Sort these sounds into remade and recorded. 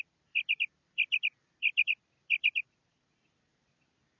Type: recorded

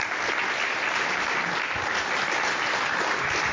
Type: recorded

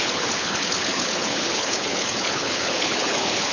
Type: remade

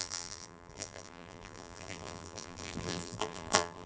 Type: remade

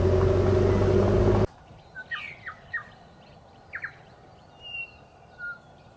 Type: recorded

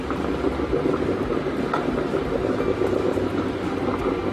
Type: recorded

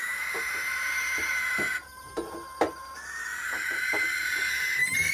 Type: recorded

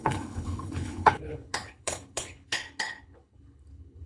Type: remade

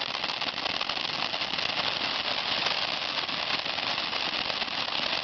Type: recorded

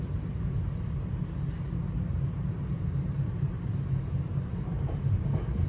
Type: remade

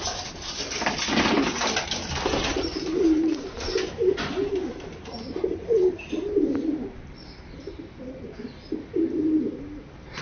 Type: recorded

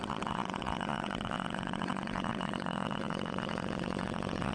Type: remade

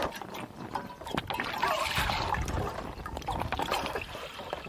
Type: recorded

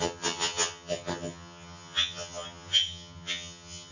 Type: remade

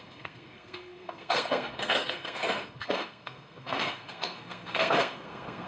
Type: remade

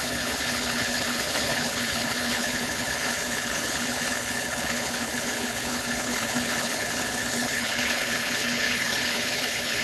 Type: remade